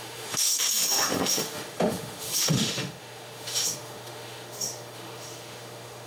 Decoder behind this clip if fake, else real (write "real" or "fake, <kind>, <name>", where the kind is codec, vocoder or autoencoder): fake, autoencoder, DAC-VAE